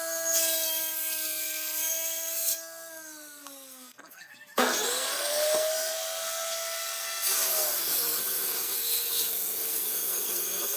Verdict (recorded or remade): remade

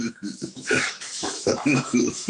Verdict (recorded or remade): remade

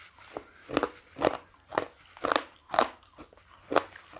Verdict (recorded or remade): recorded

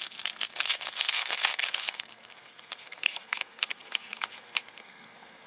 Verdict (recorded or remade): remade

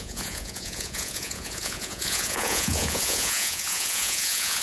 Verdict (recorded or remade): remade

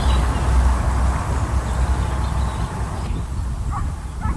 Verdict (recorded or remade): recorded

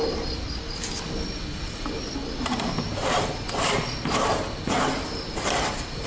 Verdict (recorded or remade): recorded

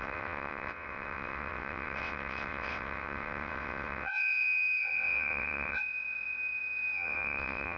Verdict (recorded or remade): remade